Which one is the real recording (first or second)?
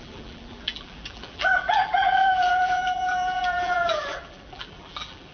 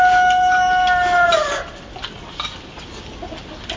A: second